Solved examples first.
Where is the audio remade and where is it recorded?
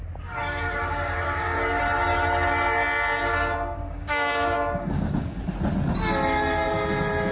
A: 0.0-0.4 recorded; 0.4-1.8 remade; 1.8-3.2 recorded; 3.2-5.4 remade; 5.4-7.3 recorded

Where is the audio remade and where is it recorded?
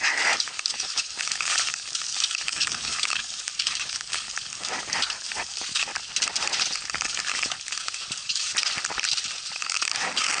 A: 0.0-5.9 remade; 5.9-6.9 recorded; 6.9-8.5 remade; 8.5-9.6 recorded; 9.6-10.4 remade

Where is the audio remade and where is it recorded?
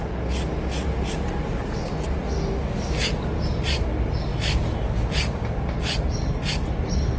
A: 0.0-7.2 recorded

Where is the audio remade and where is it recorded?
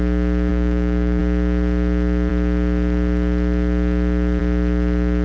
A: 0.0-0.5 recorded; 0.5-1.2 remade; 1.2-5.2 recorded